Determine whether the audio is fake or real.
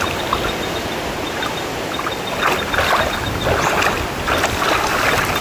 real